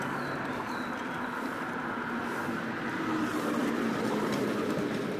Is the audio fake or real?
real